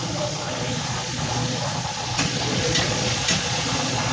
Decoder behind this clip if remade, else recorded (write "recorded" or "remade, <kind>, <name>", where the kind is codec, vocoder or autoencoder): remade, vocoder, Vocos